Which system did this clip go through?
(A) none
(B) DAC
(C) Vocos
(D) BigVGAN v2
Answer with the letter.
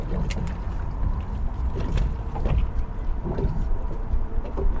A